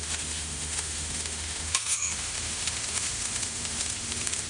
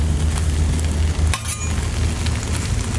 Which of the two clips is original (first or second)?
second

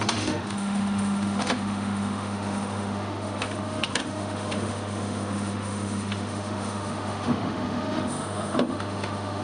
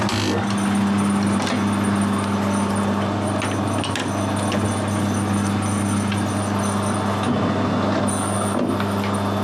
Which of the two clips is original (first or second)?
second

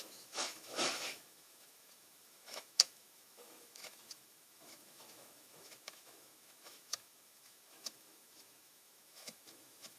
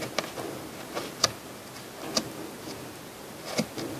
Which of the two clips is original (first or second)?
second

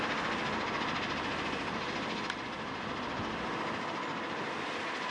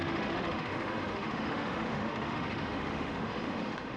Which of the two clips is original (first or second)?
first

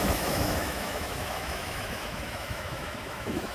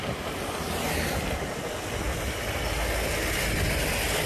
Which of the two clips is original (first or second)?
second